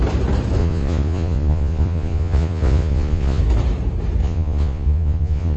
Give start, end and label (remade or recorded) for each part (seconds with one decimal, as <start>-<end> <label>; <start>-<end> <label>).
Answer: 0.0-0.6 recorded; 0.6-3.4 remade; 3.4-4.2 recorded; 4.2-5.6 remade